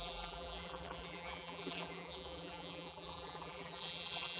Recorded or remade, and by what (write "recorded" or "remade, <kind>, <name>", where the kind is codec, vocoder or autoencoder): remade, vocoder, BigVGAN v2